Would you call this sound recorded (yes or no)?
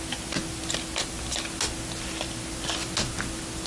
yes